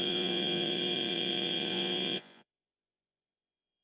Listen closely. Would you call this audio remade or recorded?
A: remade